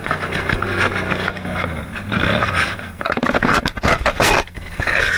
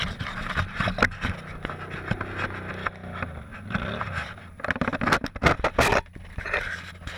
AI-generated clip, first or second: first